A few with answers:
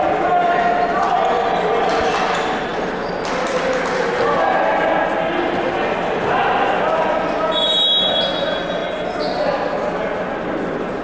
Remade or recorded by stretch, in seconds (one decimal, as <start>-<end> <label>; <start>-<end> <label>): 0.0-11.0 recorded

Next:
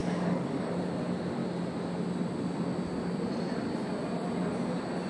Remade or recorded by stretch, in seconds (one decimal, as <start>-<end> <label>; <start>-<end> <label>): 0.0-0.7 remade; 0.7-5.1 recorded

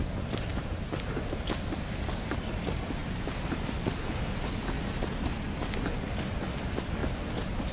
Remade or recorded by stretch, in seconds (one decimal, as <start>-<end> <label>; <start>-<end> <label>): 0.0-0.5 recorded; 0.5-1.2 remade; 1.2-3.0 recorded; 3.0-4.2 remade; 4.2-7.7 recorded

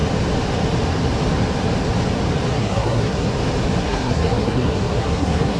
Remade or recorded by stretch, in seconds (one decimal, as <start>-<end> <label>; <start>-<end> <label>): 0.0-2.5 recorded; 2.5-3.3 remade; 3.3-3.8 recorded; 3.8-5.6 remade

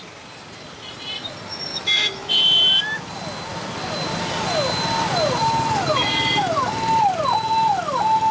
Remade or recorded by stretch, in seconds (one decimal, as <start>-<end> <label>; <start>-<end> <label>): 0.0-1.7 recorded; 1.7-2.3 remade; 2.3-5.4 recorded; 5.4-6.1 remade; 6.1-8.3 recorded

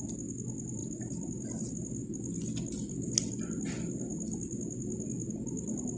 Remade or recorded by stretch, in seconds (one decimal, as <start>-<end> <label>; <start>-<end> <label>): 0.0-6.0 recorded

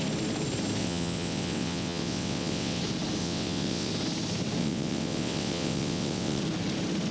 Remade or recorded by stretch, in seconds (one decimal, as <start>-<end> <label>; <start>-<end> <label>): 0.0-0.8 recorded; 0.8-2.8 remade; 2.8-3.2 recorded; 3.2-3.9 remade; 3.9-4.6 recorded; 4.6-6.4 remade; 6.4-7.1 recorded

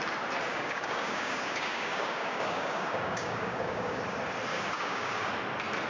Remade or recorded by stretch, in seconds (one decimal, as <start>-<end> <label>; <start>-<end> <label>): 0.0-0.5 recorded; 0.5-4.0 remade; 4.0-4.5 recorded; 4.5-5.3 remade; 5.3-5.9 recorded